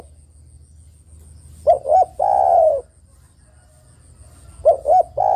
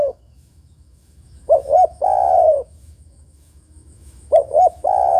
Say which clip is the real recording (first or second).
first